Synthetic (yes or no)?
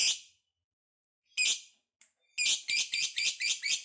no